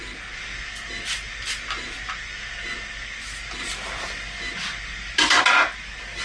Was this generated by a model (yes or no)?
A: no